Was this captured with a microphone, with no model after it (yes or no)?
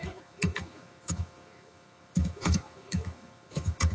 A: no